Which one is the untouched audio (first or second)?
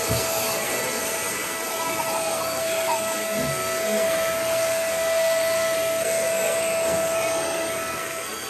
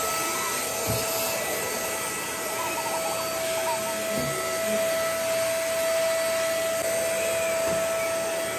second